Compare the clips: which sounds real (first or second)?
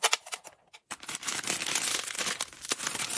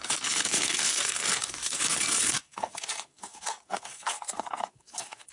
first